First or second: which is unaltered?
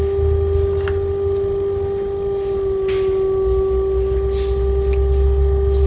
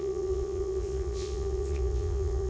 first